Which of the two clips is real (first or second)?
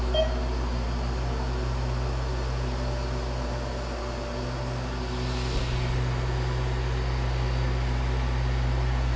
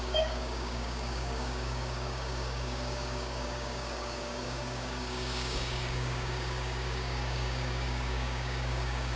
first